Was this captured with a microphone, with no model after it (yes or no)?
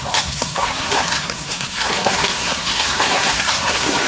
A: no